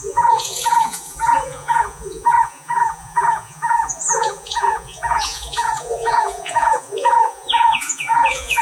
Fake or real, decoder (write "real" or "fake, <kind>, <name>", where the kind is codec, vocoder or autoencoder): fake, vocoder, Vocos